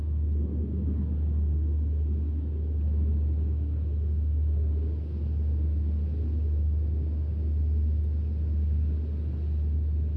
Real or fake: real